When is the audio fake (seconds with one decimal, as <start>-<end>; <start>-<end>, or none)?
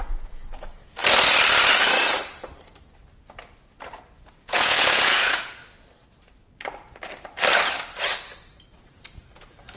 0.0-1.0; 4.3-5.6; 8.8-9.8